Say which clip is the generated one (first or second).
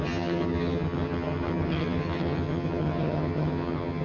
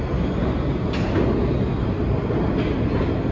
first